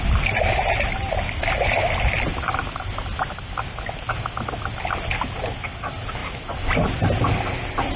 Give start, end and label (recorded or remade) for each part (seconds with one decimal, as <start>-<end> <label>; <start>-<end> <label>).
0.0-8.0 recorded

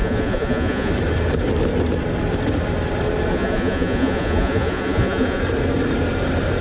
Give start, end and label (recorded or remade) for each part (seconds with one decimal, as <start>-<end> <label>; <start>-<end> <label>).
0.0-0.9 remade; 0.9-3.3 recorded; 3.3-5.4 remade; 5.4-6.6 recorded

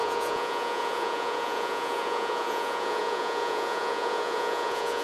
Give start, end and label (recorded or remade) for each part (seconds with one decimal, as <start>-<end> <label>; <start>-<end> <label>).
0.0-5.0 remade